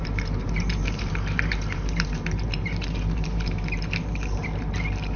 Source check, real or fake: fake